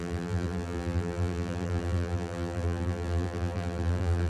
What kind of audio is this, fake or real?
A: fake